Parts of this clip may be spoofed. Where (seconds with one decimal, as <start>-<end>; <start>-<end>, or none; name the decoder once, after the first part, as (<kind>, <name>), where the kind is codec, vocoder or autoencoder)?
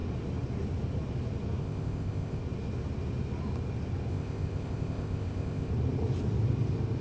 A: 1.6-2.4 (codec, ZipCodec); 4.1-5.7